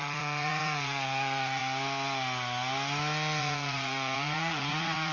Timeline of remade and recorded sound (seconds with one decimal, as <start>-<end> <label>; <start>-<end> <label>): 0.0-1.6 remade; 1.6-3.4 recorded; 3.4-5.1 remade